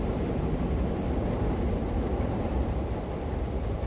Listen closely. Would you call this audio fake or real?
fake